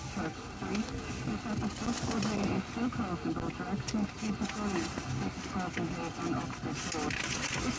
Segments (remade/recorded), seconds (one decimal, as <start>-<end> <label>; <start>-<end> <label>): 0.0-7.8 recorded